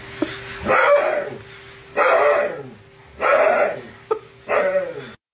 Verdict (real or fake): real